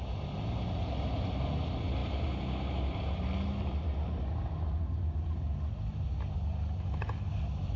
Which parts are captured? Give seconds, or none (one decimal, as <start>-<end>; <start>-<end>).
0.0-7.8

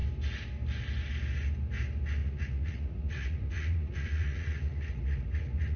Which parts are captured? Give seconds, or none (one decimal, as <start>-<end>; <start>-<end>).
0.0-2.2